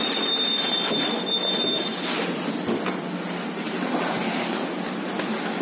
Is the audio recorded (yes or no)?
yes